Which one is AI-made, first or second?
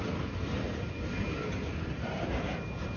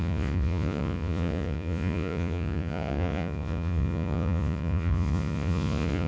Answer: second